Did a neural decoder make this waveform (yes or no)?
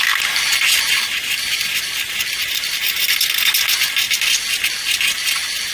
no